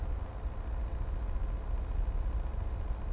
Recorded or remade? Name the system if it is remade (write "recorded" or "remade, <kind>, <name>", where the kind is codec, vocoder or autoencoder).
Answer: recorded